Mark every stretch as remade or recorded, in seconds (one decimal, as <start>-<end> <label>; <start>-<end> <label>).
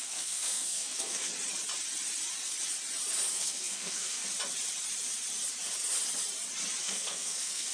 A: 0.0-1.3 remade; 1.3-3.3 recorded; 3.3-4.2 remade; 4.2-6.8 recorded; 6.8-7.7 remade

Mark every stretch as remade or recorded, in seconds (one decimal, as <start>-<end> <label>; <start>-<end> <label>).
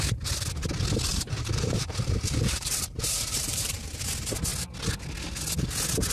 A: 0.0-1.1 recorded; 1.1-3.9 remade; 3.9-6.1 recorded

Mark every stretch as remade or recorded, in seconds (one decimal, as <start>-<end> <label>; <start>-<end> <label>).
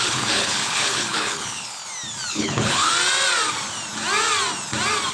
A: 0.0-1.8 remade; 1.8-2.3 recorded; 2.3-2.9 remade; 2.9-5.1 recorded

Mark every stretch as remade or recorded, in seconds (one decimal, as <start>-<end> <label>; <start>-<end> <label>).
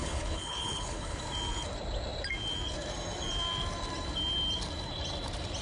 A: 0.0-1.2 remade; 1.2-5.6 recorded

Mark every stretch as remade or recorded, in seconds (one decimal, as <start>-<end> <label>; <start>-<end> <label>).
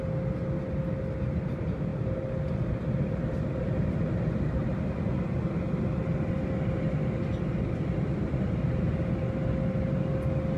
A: 0.0-10.6 recorded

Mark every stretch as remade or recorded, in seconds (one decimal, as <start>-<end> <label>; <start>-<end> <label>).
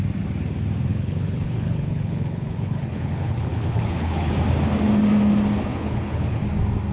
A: 0.0-0.9 recorded; 0.9-4.3 remade; 4.3-5.7 recorded; 5.7-6.4 remade; 6.4-6.9 recorded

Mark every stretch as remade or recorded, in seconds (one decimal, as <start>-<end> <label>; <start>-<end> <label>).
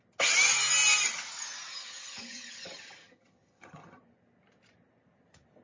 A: 0.0-1.7 recorded; 1.7-4.0 remade; 4.0-5.6 recorded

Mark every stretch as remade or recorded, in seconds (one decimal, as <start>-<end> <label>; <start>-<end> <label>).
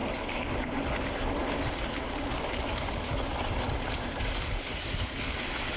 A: 0.0-5.8 recorded